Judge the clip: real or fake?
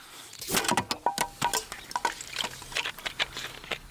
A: real